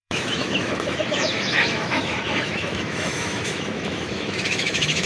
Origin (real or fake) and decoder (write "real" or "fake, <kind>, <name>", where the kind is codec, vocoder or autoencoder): fake, autoencoder, DAC-VAE